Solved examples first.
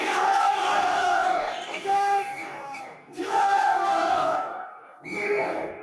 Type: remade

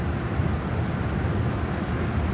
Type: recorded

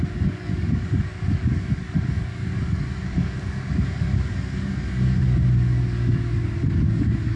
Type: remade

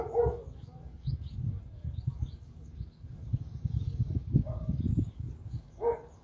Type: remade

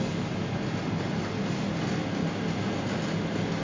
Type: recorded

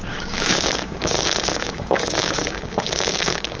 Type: remade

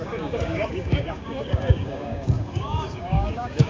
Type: remade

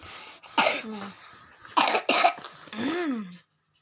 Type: recorded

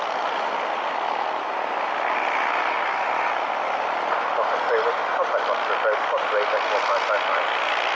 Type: recorded